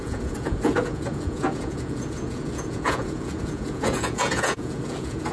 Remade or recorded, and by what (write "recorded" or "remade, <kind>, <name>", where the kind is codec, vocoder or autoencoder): remade, vocoder, Vocos